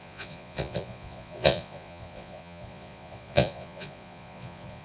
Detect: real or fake fake